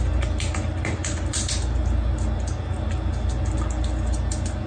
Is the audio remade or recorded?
recorded